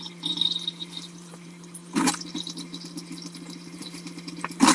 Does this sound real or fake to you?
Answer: fake